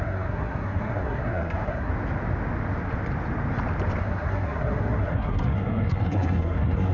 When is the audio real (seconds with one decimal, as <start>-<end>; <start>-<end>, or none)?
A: 1.9-4.0